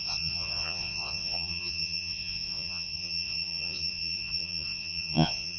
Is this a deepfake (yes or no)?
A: yes